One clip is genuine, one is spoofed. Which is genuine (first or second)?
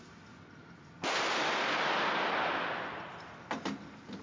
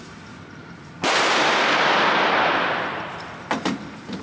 first